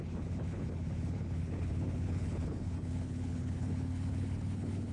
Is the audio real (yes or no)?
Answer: no